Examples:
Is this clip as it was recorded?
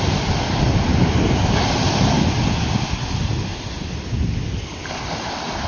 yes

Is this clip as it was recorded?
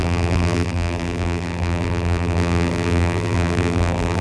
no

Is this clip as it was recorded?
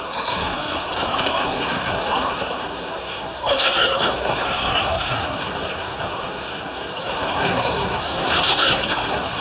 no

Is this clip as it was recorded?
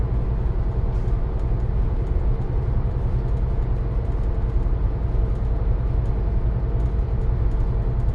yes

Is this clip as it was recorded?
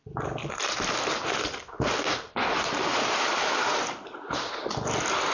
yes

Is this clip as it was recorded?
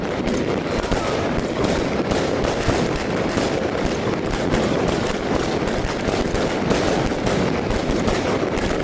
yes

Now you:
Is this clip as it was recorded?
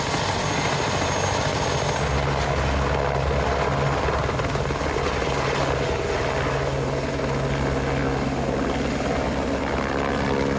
yes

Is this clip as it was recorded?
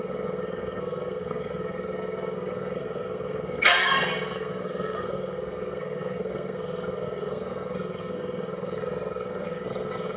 no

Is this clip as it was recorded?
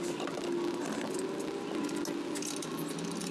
yes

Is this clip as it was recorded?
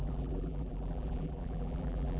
no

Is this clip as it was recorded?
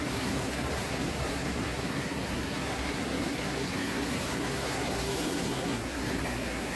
no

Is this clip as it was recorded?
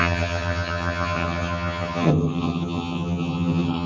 no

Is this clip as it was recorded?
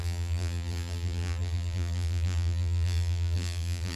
no